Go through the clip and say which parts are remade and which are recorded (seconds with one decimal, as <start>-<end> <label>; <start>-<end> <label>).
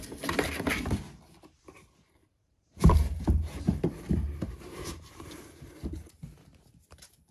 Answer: 0.0-2.2 recorded; 2.2-5.7 remade; 5.7-7.3 recorded